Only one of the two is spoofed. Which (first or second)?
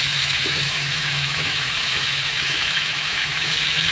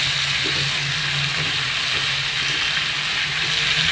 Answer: first